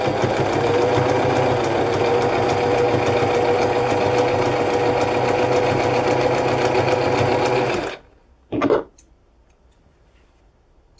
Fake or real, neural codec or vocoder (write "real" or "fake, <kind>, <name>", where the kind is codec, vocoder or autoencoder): real